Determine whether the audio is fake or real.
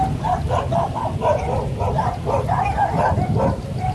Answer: real